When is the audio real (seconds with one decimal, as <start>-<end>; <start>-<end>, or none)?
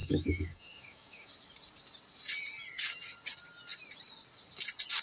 1.3-5.0